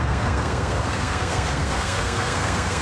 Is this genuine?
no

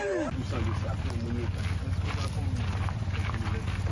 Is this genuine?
yes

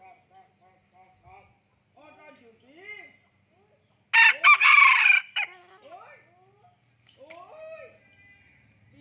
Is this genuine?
yes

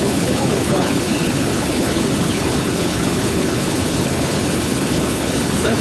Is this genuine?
no